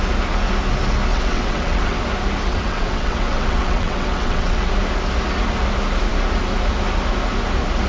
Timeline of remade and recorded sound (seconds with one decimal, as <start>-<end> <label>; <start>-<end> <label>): 0.0-1.1 recorded; 1.1-2.0 remade; 2.0-2.5 recorded; 2.5-4.7 remade; 4.7-7.9 recorded

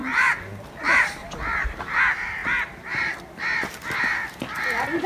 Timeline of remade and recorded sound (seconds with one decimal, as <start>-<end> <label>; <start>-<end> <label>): 0.0-0.7 remade; 0.7-1.2 recorded; 1.2-2.0 remade; 2.0-2.4 recorded; 2.4-3.1 remade; 3.1-4.2 recorded; 4.2-5.1 remade

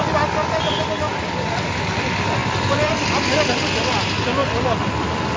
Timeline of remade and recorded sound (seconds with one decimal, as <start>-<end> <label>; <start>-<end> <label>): 0.0-2.4 recorded; 2.4-2.9 remade; 2.9-5.4 recorded

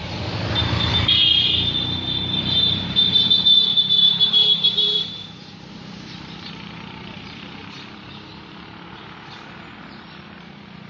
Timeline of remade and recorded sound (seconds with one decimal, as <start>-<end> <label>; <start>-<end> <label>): 0.0-3.7 recorded; 3.7-8.1 remade; 8.1-10.9 recorded

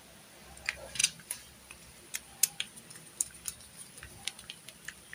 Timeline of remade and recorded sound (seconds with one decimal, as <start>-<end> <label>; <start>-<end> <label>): 0.0-5.1 recorded

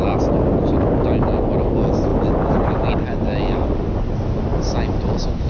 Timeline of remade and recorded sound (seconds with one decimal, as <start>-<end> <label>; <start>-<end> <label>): 0.0-5.5 recorded

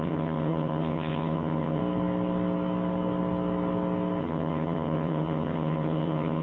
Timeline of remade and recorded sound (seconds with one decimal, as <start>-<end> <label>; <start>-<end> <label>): 0.0-1.8 remade; 1.8-4.2 recorded; 4.2-6.4 remade